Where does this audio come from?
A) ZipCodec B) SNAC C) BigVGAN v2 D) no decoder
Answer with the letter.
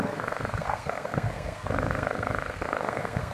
B